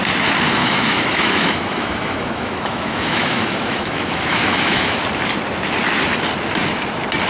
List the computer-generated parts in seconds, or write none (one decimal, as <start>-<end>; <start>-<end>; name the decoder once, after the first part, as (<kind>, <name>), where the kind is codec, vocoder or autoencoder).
0.6-5.0 (autoencoder, DAC-VAE)